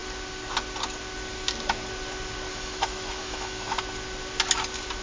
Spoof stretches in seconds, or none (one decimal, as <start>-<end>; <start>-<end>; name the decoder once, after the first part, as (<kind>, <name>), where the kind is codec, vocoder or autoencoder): 2.5-3.8 (autoencoder, DAC-VAE)